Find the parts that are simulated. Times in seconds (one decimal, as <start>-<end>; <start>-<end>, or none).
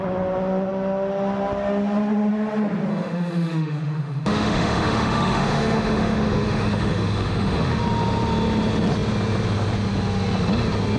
2.9-7.8